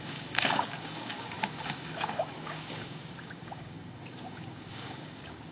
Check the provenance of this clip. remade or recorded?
remade